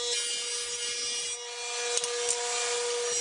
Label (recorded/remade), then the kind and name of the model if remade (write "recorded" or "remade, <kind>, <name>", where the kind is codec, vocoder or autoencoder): recorded